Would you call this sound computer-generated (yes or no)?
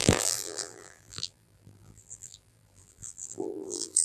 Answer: yes